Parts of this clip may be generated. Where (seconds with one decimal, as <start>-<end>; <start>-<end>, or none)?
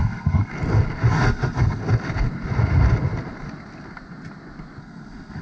0.0-0.5; 1.1-1.8; 4.8-5.4